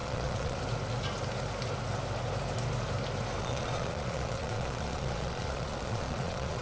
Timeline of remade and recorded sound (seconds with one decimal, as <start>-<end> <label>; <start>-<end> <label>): 0.0-0.6 remade; 0.6-3.4 recorded; 3.4-6.6 remade